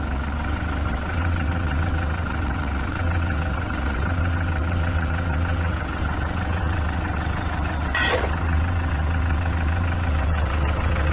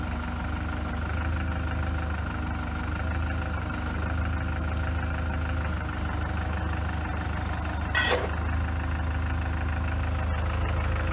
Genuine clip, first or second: second